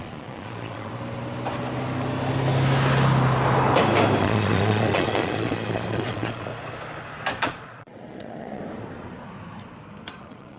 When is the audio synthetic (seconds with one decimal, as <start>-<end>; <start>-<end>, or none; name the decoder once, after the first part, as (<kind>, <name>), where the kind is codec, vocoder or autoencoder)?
0.0-0.9 (vocoder, Vocos); 4.2-6.5; 7.4-8.6; 10.2-10.6

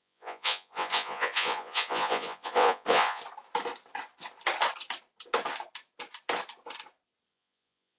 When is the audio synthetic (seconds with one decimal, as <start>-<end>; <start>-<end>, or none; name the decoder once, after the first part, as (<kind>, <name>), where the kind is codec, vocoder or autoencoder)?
0.0-3.2 (vocoder, Vocos); 7.3-8.0

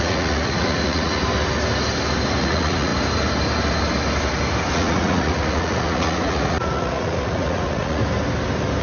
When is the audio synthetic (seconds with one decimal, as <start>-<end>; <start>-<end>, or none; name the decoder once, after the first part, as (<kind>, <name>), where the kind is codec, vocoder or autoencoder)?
0.0-1.2 (vocoder, Vocos); 2.4-2.9; 4.7-8.0